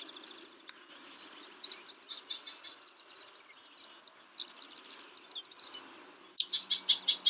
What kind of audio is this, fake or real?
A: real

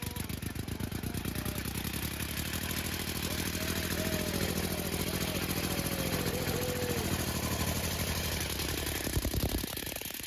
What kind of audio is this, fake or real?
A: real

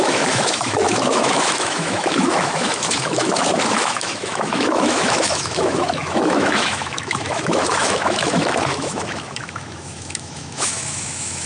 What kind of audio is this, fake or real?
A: fake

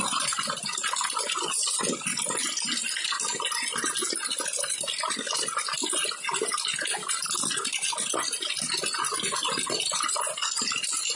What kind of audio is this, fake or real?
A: real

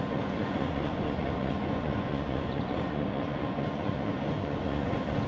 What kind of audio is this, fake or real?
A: fake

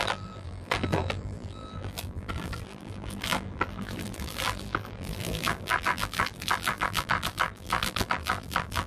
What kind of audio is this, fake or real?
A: fake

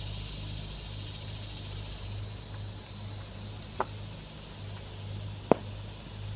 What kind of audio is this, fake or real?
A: real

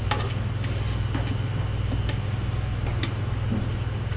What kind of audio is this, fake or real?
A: real